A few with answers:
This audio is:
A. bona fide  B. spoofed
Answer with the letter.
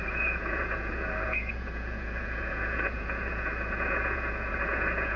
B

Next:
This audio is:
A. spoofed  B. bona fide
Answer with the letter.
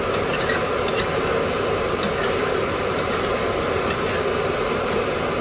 B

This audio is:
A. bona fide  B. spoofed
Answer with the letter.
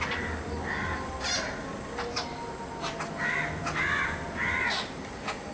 A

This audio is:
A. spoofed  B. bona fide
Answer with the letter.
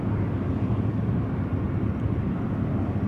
B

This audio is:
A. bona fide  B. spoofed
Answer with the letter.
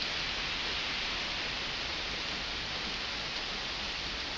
A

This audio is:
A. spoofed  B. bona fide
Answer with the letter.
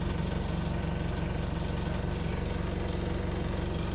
B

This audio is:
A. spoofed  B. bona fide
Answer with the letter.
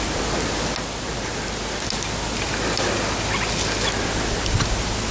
B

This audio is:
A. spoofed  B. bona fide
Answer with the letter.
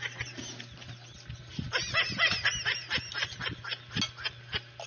B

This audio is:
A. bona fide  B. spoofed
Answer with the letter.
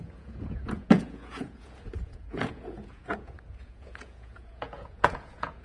B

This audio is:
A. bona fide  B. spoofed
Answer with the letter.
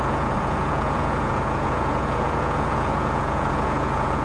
B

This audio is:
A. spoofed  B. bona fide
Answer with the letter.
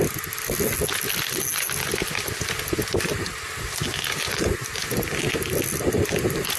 B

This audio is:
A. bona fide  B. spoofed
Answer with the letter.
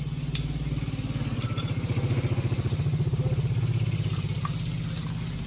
A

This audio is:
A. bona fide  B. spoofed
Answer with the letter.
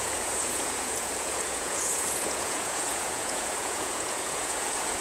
B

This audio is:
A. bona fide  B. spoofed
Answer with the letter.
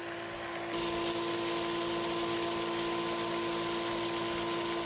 A